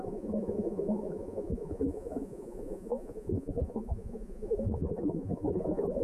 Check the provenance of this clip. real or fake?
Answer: fake